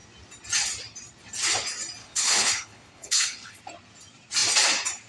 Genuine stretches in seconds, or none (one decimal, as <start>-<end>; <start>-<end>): 0.0-2.0; 3.6-5.1